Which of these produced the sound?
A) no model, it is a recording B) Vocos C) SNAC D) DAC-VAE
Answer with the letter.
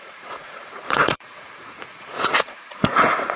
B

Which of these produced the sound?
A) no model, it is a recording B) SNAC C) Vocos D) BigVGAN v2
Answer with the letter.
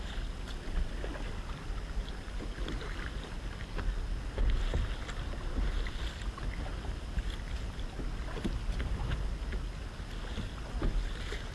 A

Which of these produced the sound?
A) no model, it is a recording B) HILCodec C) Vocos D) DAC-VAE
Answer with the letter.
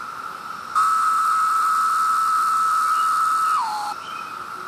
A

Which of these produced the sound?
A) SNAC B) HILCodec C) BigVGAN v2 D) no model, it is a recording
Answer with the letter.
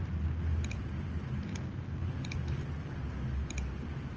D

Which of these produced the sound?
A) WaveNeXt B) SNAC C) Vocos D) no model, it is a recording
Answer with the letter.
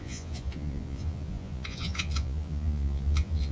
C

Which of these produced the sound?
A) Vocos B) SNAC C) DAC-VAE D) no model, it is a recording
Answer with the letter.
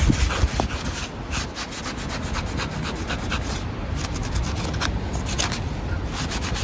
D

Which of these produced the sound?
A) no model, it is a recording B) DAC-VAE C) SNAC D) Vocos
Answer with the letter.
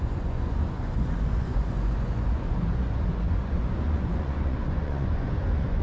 D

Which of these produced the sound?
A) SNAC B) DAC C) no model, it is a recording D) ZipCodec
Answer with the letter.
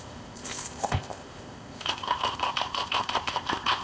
D